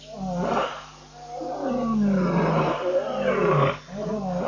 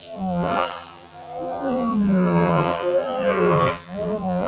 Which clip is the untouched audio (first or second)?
first